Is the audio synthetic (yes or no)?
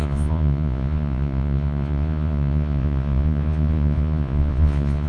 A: yes